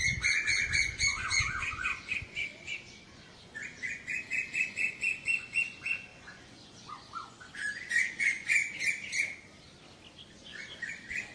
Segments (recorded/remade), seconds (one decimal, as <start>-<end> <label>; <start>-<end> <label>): 0.0-8.6 remade; 8.6-10.3 recorded; 10.3-11.3 remade